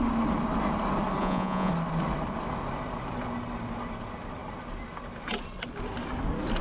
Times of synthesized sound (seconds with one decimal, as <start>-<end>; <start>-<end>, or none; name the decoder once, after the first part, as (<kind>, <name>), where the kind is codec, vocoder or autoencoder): 1.2-1.7 (vocoder, Vocos)

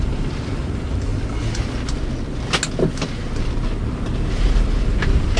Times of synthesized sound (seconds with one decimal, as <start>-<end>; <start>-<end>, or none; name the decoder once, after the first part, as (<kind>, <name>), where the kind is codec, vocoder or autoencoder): 0.0-1.1 (vocoder, BigVGAN v2); 4.3-5.4

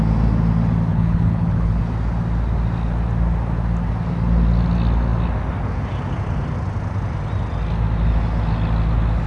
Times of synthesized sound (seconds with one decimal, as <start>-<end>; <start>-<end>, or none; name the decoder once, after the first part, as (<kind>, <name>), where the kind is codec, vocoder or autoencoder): 0.9-1.8 (codec, HILCodec)

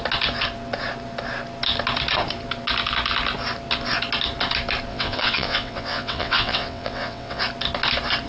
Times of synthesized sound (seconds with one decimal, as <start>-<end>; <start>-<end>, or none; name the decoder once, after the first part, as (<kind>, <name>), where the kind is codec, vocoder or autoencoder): 4.9-7.4 (vocoder, WaveNeXt)

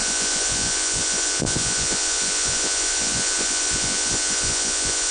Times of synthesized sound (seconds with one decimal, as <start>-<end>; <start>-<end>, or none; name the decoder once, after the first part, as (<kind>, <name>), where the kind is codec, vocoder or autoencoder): 0.0-5.1 (vocoder, Vocos)

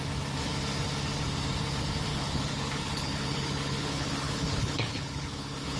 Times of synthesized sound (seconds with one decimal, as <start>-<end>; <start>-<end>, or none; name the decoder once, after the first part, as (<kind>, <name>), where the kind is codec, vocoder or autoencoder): 2.1-5.8 (codec, HILCodec)

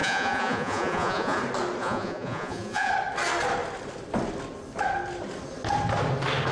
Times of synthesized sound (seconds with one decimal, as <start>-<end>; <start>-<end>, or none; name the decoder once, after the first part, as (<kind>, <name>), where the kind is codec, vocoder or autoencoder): 0.0-1.4 (vocoder, Vocos); 1.8-2.9

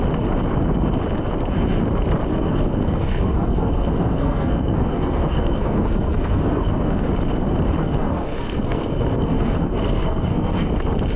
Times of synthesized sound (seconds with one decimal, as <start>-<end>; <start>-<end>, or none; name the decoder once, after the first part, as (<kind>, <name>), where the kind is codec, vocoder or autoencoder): 2.3-7.1 (codec, SNAC); 7.8-10.7